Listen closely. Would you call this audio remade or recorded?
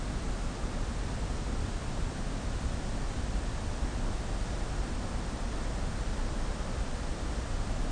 recorded